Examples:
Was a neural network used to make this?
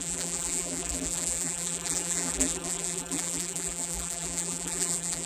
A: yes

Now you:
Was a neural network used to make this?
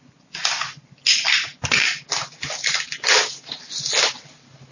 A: no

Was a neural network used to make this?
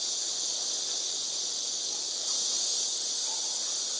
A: no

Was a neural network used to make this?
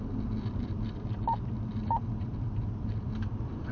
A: yes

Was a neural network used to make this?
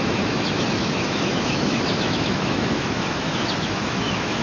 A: yes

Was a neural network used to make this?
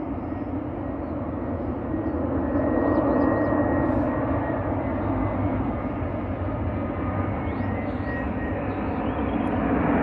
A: no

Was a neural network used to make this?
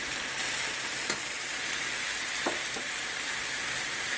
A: no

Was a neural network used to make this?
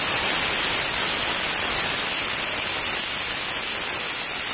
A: no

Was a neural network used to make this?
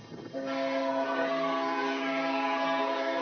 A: yes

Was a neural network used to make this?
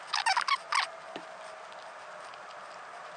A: no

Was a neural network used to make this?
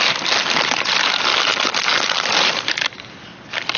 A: no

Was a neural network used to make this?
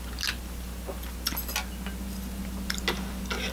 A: no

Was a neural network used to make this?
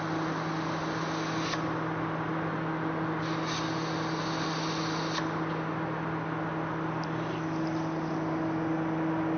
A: no